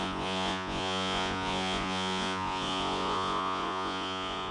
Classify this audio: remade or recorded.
remade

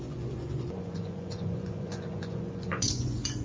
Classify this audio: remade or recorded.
remade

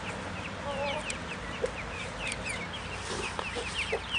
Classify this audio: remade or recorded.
recorded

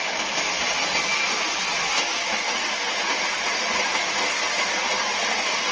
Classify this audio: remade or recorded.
recorded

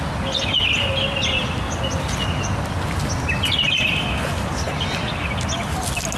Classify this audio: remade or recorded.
recorded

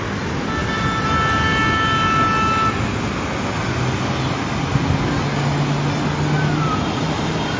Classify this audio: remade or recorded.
recorded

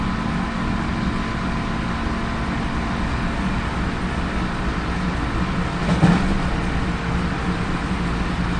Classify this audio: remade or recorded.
recorded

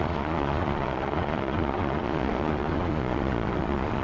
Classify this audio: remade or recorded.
remade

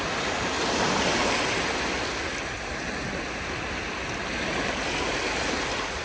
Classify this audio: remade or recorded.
recorded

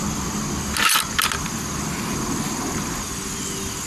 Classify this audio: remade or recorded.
recorded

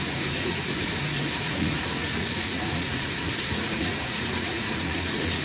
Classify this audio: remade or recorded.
remade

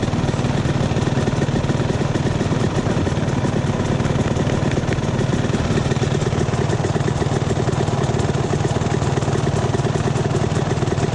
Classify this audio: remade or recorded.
recorded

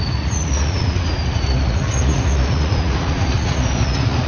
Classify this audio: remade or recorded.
remade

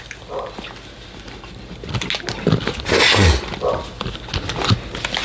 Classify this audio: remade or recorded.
recorded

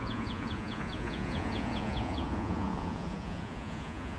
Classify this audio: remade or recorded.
remade